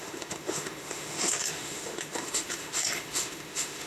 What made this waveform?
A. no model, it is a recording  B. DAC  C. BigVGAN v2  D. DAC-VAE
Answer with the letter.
D